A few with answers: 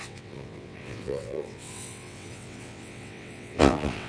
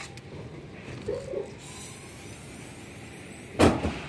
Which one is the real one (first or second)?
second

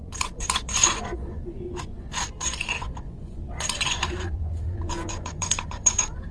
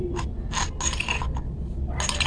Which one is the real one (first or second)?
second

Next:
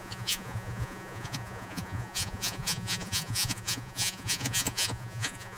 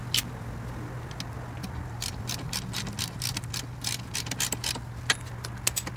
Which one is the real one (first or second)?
second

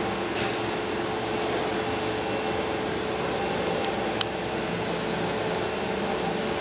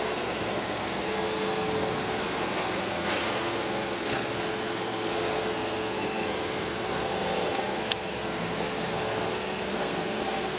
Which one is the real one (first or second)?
first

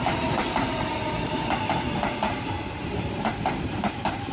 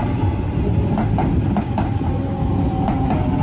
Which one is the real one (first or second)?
second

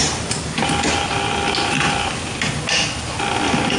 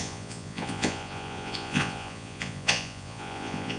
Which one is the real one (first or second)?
first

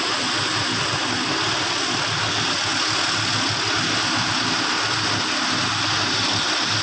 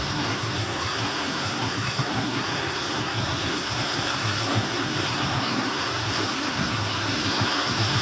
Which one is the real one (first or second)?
first